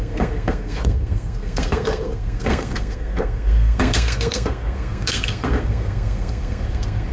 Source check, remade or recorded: remade